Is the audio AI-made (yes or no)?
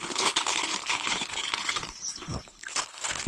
yes